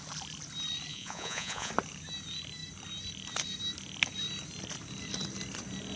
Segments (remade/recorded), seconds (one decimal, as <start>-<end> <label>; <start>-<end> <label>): 0.0-0.9 recorded; 0.9-1.7 remade; 1.7-6.0 recorded